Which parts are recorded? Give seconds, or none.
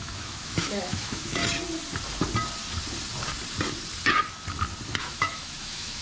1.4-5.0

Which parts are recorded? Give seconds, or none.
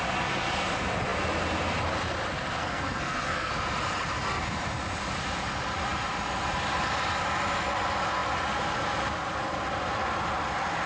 0.0-2.6; 3.5-10.9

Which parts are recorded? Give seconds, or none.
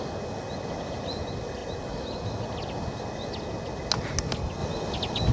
0.0-5.3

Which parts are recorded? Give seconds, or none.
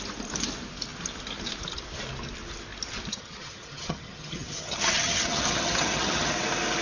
0.0-3.1; 6.3-6.8